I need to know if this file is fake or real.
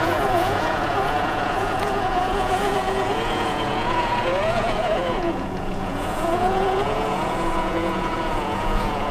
fake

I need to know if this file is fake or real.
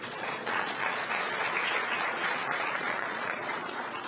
fake